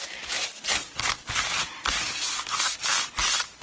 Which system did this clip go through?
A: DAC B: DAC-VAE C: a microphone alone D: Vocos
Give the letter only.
C